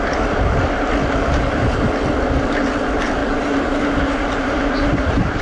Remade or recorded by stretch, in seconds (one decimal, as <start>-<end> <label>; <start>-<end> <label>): 0.0-1.0 recorded; 1.0-1.9 remade; 1.9-3.2 recorded; 3.2-5.4 remade